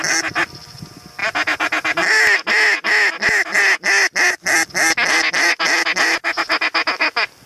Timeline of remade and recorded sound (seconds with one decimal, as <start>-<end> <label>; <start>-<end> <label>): 0.0-7.5 recorded